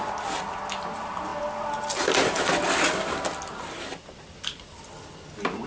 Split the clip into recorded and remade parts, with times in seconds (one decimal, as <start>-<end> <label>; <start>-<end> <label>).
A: 0.0-5.7 recorded